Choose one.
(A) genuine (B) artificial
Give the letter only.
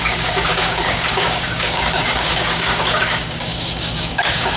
B